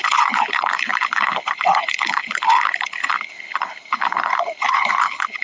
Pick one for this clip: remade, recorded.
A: remade